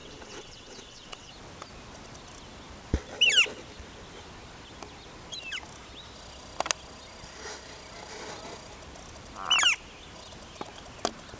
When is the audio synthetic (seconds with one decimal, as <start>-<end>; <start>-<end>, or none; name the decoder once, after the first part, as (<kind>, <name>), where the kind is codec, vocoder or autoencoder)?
0.0-1.3 (vocoder, WaveNeXt)